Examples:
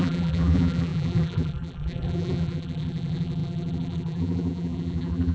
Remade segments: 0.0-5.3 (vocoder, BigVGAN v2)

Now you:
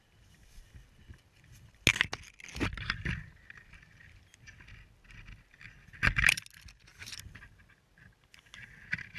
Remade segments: none

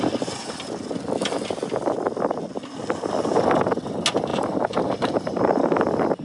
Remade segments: 4.3-6.2 (vocoder, BigVGAN v2)

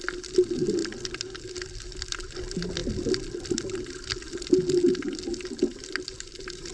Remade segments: 5.7-6.7 (vocoder, BigVGAN v2)